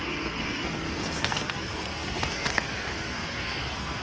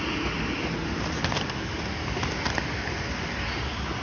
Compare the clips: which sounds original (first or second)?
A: second